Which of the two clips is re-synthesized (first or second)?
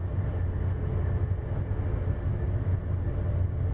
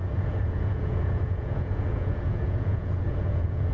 second